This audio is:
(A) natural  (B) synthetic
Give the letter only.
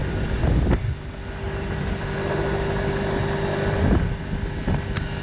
A